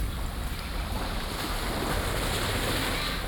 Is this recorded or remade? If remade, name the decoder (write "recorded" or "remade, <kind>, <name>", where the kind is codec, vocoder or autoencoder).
recorded